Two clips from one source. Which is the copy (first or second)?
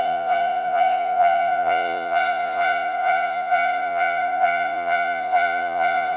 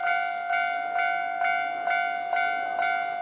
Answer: first